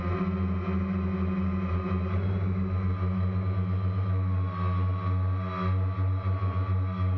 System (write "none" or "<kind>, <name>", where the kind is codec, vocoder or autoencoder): none